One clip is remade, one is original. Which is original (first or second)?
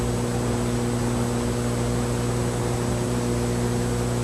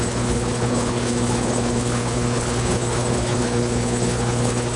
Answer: first